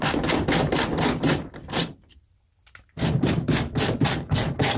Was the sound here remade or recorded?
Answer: recorded